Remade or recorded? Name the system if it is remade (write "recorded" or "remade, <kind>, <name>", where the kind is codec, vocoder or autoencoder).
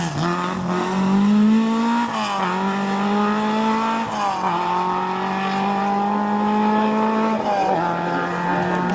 recorded